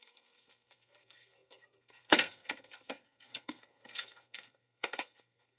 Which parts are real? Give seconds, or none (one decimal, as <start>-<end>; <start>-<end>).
none